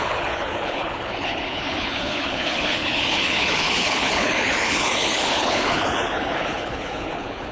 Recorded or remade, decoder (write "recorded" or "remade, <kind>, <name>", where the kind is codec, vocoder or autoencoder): remade, codec, HILCodec